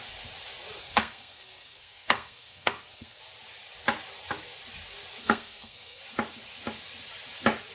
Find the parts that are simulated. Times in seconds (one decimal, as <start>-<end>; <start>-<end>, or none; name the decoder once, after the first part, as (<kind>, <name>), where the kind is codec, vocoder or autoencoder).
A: 0.8-3.2 (codec, SNAC); 5.2-6.0